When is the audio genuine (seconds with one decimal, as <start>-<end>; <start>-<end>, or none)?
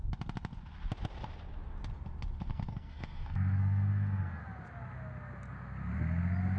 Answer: 0.0-2.5; 4.4-6.6